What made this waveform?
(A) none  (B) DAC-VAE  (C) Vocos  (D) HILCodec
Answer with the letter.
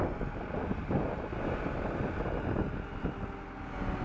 A